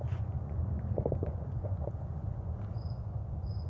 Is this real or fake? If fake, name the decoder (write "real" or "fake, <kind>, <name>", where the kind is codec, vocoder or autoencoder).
fake, vocoder, Vocos